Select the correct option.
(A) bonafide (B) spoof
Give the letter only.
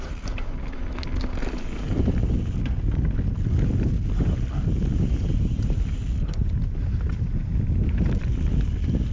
A